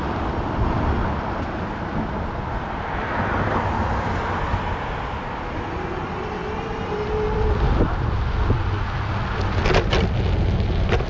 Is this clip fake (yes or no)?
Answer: no